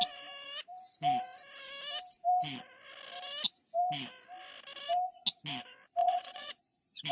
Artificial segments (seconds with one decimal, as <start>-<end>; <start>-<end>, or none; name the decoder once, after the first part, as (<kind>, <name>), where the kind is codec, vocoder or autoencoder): 6.0-6.6 (vocoder, WaveNeXt)